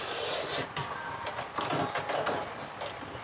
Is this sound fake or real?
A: real